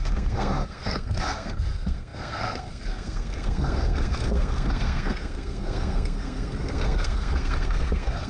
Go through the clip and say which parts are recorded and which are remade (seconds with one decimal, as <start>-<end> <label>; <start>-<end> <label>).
0.0-8.3 remade